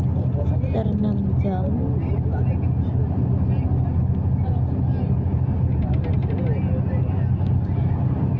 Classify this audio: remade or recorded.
recorded